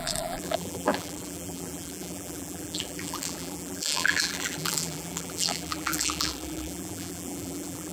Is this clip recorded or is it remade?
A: remade